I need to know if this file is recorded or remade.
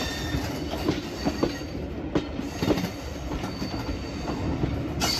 recorded